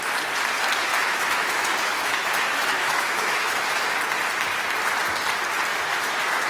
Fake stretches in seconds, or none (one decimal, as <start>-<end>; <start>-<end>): 0.9-4.0; 5.7-6.5